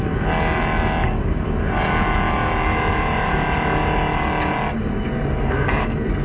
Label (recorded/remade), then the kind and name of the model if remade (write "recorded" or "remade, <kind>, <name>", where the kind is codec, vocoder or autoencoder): recorded